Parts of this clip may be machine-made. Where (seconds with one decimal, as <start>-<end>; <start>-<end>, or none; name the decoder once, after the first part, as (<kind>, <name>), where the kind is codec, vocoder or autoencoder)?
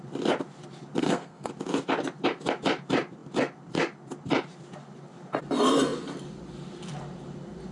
1.0-1.5 (codec, SNAC)